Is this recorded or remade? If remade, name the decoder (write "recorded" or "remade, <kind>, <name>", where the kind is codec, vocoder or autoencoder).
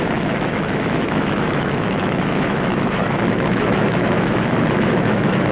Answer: remade, autoencoder, DAC-VAE